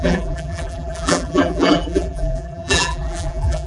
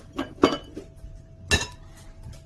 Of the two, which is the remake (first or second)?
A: first